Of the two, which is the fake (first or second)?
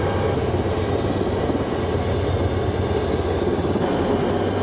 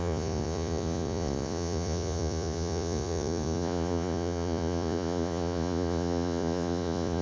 second